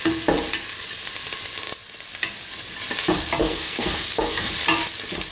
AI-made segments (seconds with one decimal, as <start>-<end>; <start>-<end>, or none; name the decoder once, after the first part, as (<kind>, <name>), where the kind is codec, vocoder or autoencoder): 3.4-4.5 (codec, SNAC)